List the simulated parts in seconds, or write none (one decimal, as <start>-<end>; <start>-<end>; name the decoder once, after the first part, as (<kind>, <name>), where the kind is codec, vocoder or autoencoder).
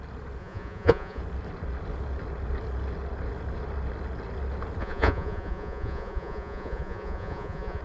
0.4-1.2 (vocoder, Vocos); 4.8-7.8